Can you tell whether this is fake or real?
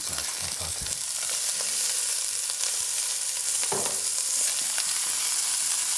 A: real